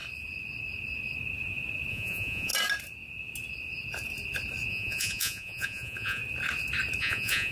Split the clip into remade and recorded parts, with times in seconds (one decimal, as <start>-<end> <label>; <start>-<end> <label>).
0.0-1.9 recorded; 1.9-2.5 remade; 2.5-4.7 recorded; 4.7-6.2 remade; 6.2-7.0 recorded; 7.0-7.5 remade